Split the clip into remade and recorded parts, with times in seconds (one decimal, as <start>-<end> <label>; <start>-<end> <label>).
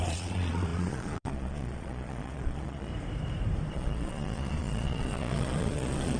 0.0-2.9 remade; 2.9-3.7 recorded; 3.7-6.2 remade